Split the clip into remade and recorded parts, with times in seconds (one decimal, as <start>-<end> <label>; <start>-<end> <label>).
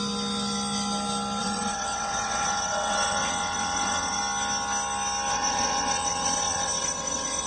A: 0.0-1.4 recorded; 1.4-4.2 remade; 4.2-5.3 recorded; 5.3-7.5 remade